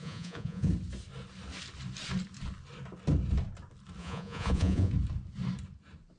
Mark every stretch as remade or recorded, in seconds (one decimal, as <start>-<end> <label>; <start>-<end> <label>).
0.0-0.7 remade; 0.7-4.0 recorded; 4.0-4.9 remade; 4.9-6.2 recorded

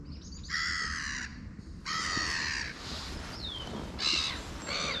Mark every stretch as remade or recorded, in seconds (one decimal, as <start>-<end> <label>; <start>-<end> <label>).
0.0-1.3 recorded; 1.3-4.3 remade; 4.3-5.0 recorded

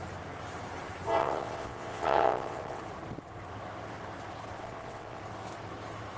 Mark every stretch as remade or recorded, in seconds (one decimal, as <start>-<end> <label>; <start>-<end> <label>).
0.0-1.2 recorded; 1.2-2.8 remade; 2.8-4.6 recorded; 4.6-5.2 remade; 5.2-6.2 recorded